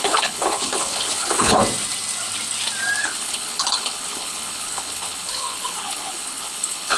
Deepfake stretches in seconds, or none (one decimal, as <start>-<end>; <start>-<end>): 0.0-1.6; 3.0-7.0